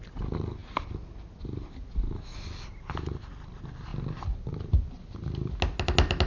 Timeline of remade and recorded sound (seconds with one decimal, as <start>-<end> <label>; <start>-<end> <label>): 0.0-6.3 recorded